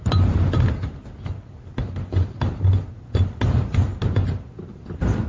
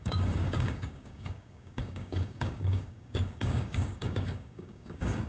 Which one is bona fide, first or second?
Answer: first